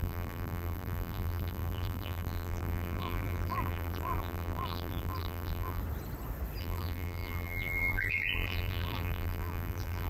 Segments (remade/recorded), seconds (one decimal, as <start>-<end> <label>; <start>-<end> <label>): 0.0-5.8 remade; 5.8-6.6 recorded; 6.6-10.1 remade